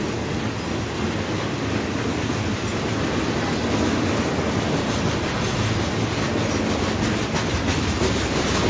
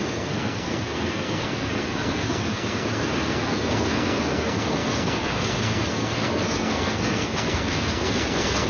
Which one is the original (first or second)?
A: first